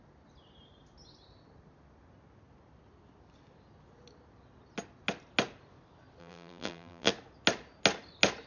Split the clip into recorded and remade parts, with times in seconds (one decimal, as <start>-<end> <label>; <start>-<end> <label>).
0.0-6.2 recorded; 6.2-7.1 remade; 7.1-8.5 recorded